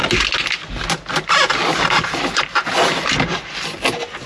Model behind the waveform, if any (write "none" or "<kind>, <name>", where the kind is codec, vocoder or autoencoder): none